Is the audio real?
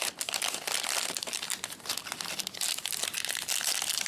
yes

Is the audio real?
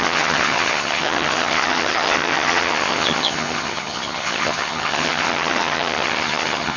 no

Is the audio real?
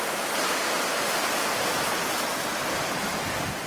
yes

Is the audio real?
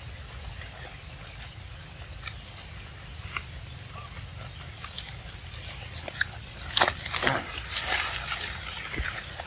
yes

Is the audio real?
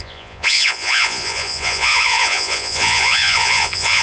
no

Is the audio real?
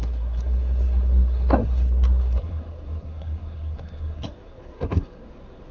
no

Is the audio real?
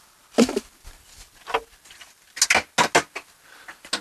yes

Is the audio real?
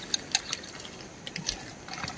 yes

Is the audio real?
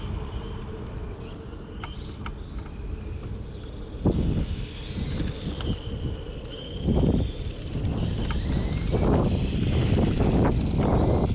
yes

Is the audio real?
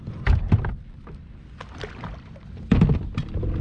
yes